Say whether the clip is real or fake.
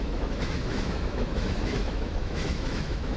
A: fake